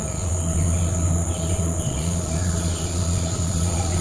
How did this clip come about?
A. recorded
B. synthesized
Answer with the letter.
B